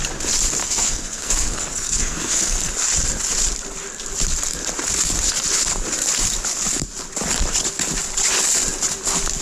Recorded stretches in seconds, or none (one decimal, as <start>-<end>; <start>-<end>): 0.0-0.6; 2.7-9.4